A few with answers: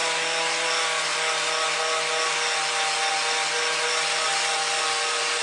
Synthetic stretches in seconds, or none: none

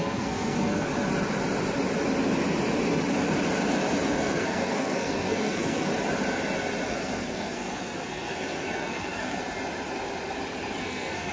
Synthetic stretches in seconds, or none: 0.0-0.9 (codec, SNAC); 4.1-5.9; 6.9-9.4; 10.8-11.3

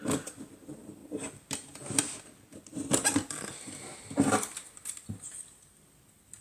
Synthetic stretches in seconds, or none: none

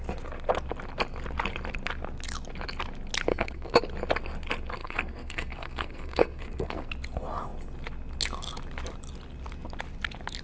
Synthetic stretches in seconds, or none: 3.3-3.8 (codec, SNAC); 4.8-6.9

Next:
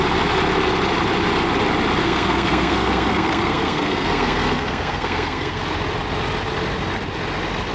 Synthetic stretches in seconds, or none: 2.0-5.6 (codec, SNAC)

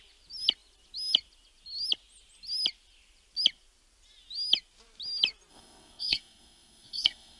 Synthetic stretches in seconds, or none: 5.5-7.4 (codec, SNAC)

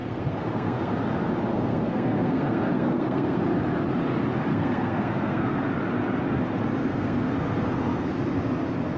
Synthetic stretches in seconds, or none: 0.0-0.9 (codec, SNAC); 1.5-3.4; 4.5-5.7; 6.9-8.1